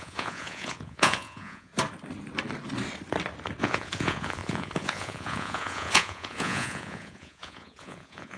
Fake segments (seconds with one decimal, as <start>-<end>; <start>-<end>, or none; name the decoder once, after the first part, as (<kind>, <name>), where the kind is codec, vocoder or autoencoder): 0.0-1.7 (vocoder, Vocos); 3.6-8.4